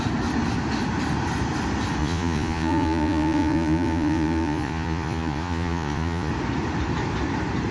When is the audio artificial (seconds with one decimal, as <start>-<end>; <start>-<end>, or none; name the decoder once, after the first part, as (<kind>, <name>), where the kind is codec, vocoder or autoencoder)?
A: 2.0-6.3 (vocoder, Vocos)